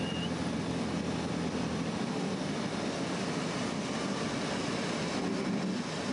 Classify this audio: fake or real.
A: real